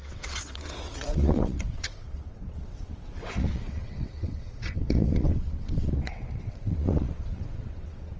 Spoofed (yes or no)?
yes